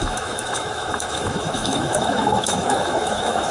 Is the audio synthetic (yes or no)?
yes